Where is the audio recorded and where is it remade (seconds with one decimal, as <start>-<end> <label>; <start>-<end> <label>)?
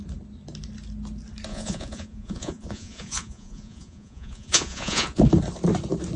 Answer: 0.0-1.5 recorded; 1.5-5.2 remade; 5.2-6.2 recorded